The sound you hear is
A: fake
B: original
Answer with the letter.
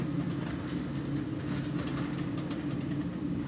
B